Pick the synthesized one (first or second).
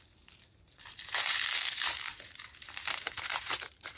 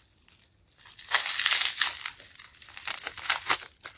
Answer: first